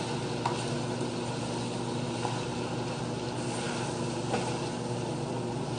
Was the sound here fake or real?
real